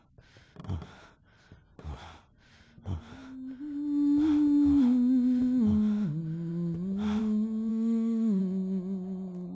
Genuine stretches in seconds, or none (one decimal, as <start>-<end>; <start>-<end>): 0.0-7.7; 8.4-9.5